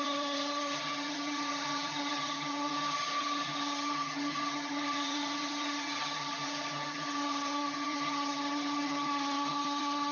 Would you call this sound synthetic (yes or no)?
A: yes